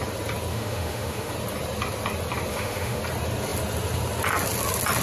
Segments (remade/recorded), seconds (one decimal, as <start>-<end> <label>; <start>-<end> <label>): 0.0-0.5 recorded; 0.5-1.3 remade; 1.3-2.5 recorded; 2.5-3.0 remade; 3.0-5.0 recorded